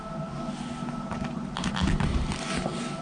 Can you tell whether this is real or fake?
real